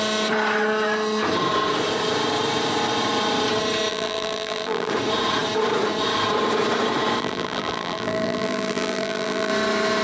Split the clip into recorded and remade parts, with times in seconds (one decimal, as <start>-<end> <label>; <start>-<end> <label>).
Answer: 0.0-3.9 recorded; 3.9-4.9 remade; 4.9-7.2 recorded; 7.2-9.5 remade; 9.5-10.0 recorded